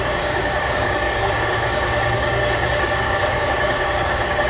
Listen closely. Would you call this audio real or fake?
fake